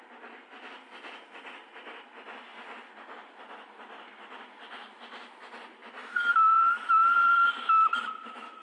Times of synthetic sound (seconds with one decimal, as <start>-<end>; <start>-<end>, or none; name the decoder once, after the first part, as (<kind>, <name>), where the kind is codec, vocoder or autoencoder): none